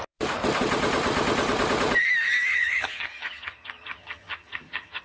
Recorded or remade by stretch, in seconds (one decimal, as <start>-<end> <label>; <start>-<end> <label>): 0.0-2.5 recorded; 2.5-5.0 remade